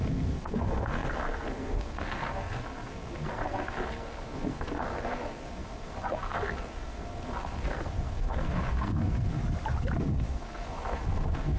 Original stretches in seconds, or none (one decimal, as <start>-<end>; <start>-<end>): 9.4-10.0